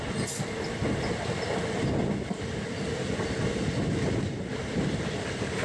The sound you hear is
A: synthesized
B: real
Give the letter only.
B